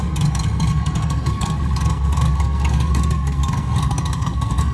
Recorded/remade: remade